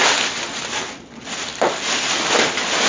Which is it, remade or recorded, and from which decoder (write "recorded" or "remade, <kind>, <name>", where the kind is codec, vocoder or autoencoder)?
recorded